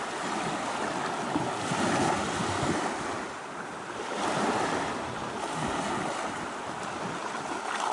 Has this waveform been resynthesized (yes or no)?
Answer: no